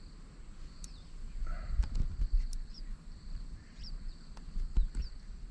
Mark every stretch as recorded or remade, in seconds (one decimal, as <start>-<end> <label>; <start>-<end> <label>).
0.0-2.5 recorded; 2.5-4.9 remade; 4.9-5.5 recorded

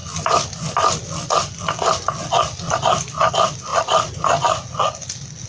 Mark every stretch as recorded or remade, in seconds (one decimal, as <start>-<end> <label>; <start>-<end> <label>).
0.0-3.7 recorded; 3.7-5.5 remade

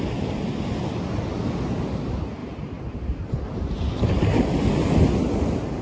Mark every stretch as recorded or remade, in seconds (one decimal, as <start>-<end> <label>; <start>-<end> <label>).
0.0-2.4 recorded; 2.4-4.7 remade; 4.7-5.8 recorded

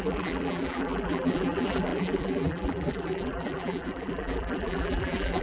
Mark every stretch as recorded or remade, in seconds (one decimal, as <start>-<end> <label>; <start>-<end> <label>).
0.0-5.4 remade